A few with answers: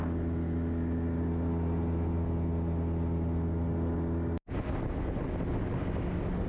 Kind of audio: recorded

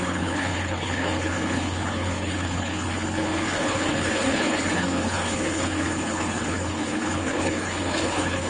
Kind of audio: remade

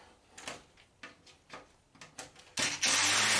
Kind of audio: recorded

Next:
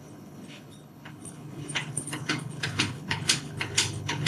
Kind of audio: remade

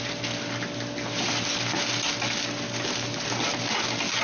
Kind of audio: recorded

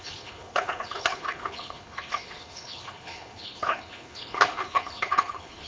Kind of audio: remade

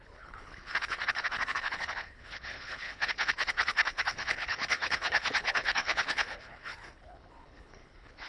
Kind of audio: remade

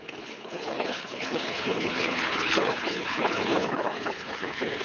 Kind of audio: remade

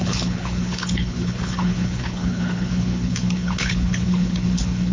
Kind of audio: remade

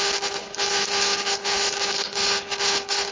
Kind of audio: remade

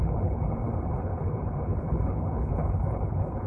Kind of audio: remade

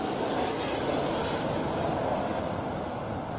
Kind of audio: recorded